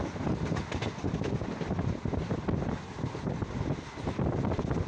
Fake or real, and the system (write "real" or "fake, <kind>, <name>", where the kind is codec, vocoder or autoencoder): real